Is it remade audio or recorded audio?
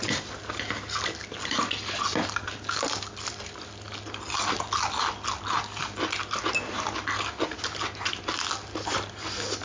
recorded